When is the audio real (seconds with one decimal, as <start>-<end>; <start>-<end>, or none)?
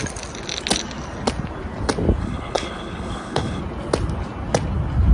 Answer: 0.0-2.2; 3.6-5.1